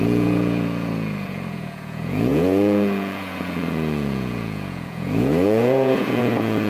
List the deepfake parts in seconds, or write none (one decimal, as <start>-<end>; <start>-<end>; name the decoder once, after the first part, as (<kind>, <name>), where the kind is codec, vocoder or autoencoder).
0.0-6.7 (vocoder, Vocos)